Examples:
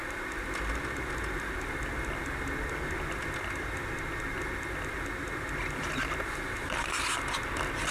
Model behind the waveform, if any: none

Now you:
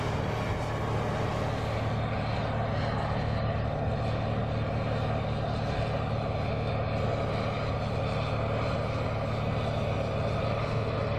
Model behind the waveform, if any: none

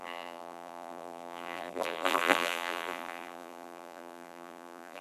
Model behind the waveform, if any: vocoder, BigVGAN v2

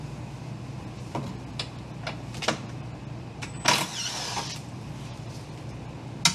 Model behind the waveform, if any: none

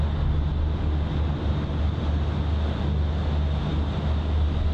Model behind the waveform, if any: none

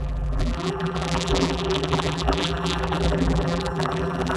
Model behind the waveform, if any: vocoder, BigVGAN v2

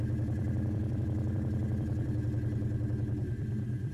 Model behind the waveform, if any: vocoder, BigVGAN v2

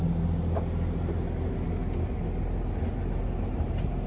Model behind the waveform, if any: none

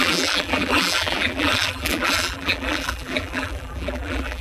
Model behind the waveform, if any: vocoder, BigVGAN v2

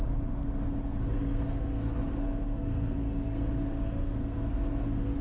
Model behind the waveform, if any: codec, SNAC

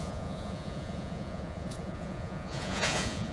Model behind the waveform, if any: vocoder, Vocos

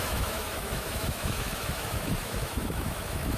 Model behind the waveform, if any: autoencoder, DAC-VAE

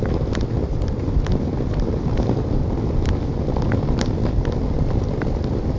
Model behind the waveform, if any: none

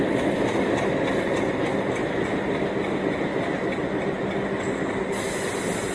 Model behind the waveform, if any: none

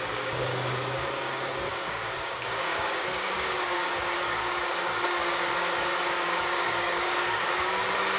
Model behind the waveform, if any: codec, DAC